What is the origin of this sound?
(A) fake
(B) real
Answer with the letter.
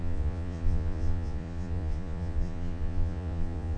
A